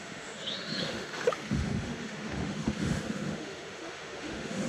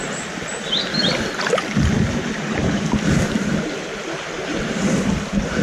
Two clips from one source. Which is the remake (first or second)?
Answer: first